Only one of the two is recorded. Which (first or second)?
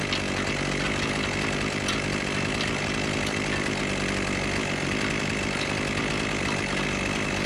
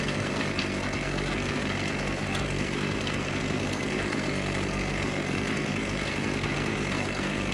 first